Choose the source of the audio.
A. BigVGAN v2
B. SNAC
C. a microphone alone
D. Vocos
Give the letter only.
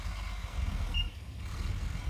B